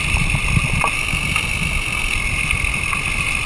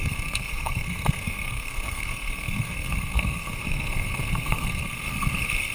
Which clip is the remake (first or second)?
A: second